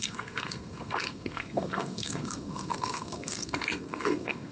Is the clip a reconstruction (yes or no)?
yes